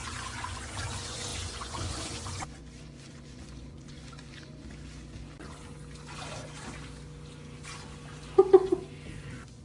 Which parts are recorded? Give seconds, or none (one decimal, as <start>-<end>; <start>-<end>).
4.5-9.2